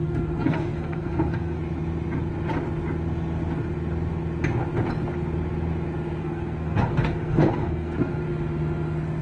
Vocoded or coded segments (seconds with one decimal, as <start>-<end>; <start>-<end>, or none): 0.0-1.6; 6.2-8.2